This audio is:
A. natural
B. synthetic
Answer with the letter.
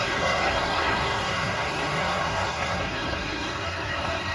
B